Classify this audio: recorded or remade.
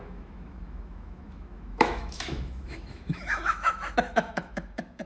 remade